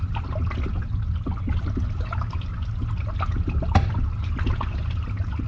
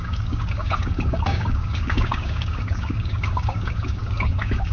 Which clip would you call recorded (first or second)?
first